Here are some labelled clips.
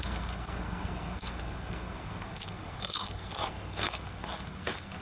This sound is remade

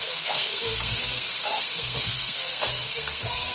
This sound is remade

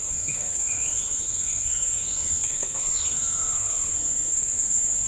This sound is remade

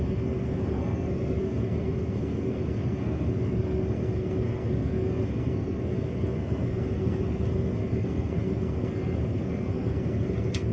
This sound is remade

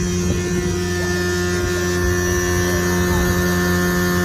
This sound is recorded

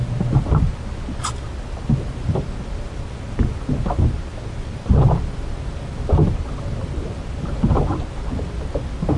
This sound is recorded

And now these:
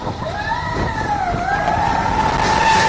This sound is recorded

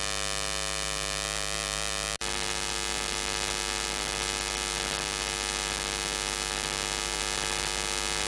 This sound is recorded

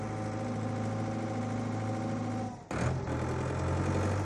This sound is recorded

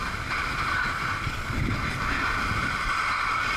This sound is recorded